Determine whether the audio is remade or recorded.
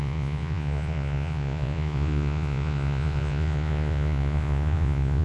remade